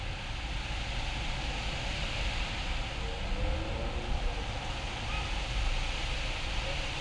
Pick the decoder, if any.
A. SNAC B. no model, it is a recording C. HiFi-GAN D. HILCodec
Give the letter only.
B